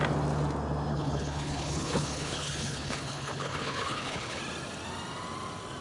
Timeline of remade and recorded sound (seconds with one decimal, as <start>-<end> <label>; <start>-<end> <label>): 0.0-0.9 recorded; 0.9-4.4 remade; 4.4-5.8 recorded